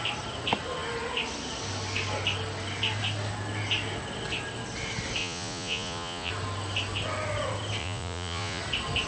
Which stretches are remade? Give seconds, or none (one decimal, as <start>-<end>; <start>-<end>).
5.2-6.3; 7.8-8.6